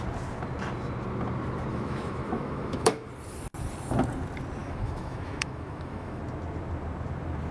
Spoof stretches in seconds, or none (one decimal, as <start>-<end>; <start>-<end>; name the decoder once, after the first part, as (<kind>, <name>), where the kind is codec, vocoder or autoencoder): 1.7-3.1 (autoencoder, DAC-VAE); 4.6-6.2